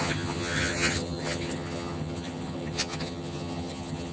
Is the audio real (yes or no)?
no